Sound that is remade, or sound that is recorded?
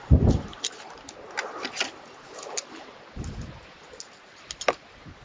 recorded